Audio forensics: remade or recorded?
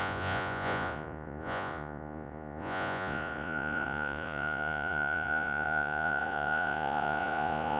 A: remade